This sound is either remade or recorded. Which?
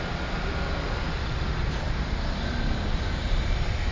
recorded